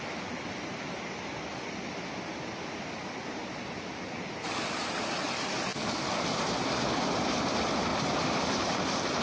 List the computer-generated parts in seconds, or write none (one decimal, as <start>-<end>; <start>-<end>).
7.9-9.2